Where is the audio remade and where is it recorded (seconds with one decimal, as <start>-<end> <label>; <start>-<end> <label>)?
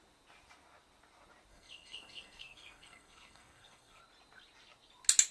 0.0-1.5 recorded; 1.5-4.0 remade; 4.0-5.3 recorded